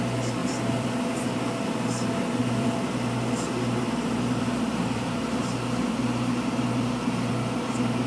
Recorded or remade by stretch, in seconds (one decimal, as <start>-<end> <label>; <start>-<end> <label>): 0.0-0.4 recorded; 0.4-1.2 remade; 1.2-2.4 recorded; 2.4-7.3 remade; 7.3-8.1 recorded